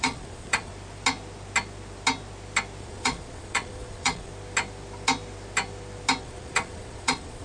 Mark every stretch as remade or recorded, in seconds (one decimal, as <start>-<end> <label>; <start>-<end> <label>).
0.0-0.7 remade; 0.7-2.8 recorded; 2.8-4.3 remade; 4.3-6.2 recorded; 6.2-7.4 remade